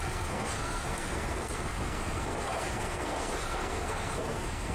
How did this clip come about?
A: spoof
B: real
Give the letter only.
A